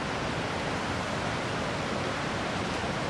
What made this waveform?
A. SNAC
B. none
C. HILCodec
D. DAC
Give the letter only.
B